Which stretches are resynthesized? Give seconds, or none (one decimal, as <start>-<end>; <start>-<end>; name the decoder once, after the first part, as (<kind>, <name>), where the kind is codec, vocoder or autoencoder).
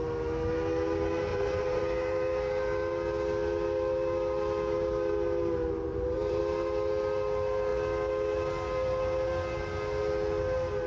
1.3-1.8 (vocoder, BigVGAN v2); 5.9-6.4